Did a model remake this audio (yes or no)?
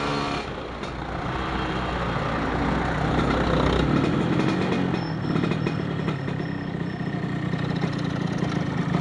no